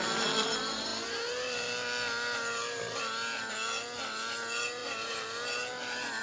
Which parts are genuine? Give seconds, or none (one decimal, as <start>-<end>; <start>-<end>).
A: 0.0-6.2